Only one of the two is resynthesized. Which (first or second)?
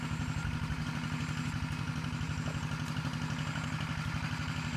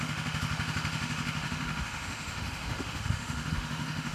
second